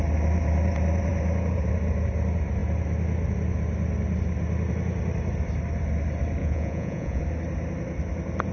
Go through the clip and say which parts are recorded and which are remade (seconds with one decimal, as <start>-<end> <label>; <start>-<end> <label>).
0.0-6.4 recorded; 6.4-7.2 remade; 7.2-8.5 recorded